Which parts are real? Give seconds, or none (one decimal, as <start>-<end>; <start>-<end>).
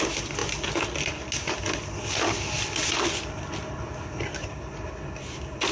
0.0-5.7